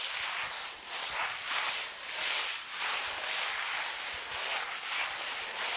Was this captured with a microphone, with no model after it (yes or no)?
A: yes